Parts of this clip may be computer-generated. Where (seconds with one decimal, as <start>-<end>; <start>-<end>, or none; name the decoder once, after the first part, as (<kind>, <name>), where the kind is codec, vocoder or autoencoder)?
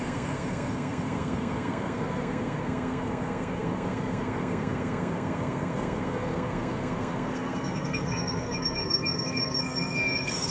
0.0-10.5 (codec, SNAC)